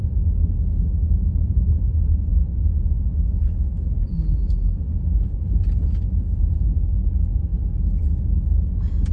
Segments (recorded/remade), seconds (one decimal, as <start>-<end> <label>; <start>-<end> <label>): 0.0-9.1 recorded